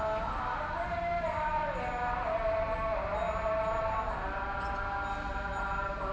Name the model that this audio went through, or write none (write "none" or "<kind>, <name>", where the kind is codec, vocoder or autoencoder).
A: none